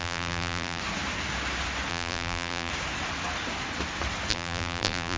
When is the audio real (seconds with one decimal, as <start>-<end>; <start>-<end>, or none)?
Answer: 0.8-1.9; 2.7-4.3